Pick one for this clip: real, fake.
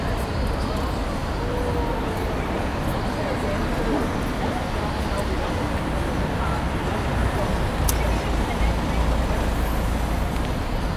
real